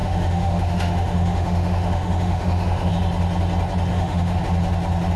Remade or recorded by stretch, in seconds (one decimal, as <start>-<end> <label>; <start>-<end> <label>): 0.0-2.9 remade; 2.9-3.9 recorded; 3.9-4.4 remade; 4.4-5.2 recorded